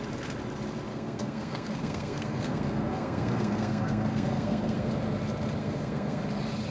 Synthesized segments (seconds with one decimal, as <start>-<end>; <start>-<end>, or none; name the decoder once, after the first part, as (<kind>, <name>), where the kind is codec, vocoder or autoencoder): 0.9-4.9 (codec, SNAC); 5.6-6.2